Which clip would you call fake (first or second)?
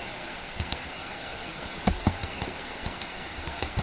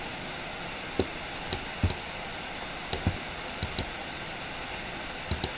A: first